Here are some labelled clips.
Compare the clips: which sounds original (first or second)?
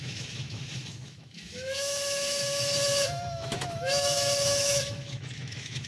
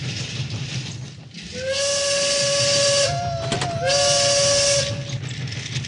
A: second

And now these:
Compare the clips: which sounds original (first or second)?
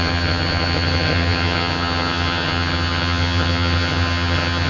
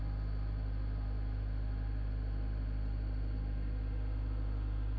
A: second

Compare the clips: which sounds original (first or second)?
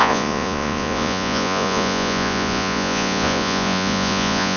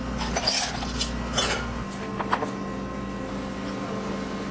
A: second